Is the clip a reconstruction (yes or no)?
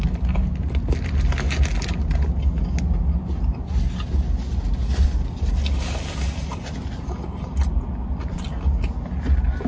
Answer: no